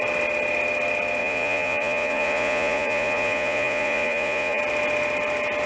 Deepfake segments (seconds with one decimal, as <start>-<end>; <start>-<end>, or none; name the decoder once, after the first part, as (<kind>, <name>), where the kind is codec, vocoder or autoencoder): 1.2-4.6 (vocoder, Vocos)